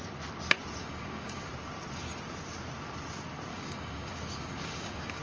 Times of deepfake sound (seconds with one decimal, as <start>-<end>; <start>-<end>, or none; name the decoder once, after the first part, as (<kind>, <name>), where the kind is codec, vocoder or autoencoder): 0.8-1.5 (codec, DAC); 3.5-5.2